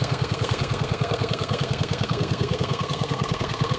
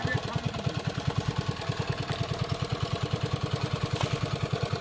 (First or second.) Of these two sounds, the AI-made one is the first